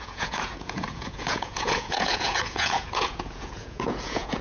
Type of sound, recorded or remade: remade